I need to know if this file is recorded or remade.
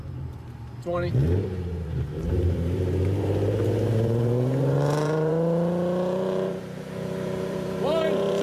remade